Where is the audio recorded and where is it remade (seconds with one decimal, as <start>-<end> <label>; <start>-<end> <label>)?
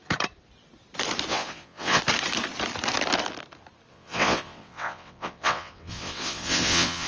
0.0-1.3 recorded; 1.3-2.0 remade; 2.0-3.9 recorded; 3.9-7.1 remade